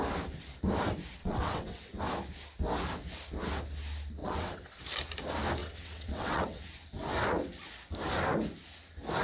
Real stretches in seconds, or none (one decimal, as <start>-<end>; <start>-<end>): 0.0-1.2; 2.0-4.2; 4.8-5.6; 6.6-9.2